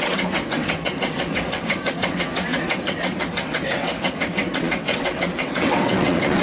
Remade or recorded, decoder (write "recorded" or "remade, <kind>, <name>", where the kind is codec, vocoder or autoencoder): remade, vocoder, WaveNeXt